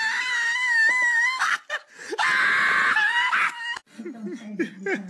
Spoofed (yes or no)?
no